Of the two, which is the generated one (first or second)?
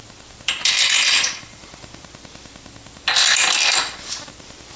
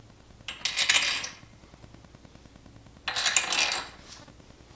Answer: first